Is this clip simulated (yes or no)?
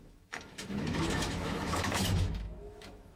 yes